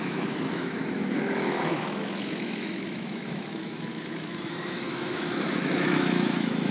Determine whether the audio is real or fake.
fake